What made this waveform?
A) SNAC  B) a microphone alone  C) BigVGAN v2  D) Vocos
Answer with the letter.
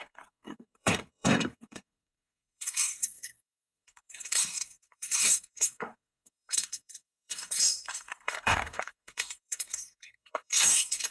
A